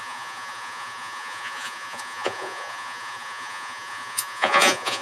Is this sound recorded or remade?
remade